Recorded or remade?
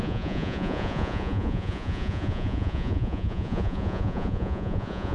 remade